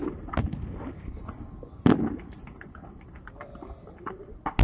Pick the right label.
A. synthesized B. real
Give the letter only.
B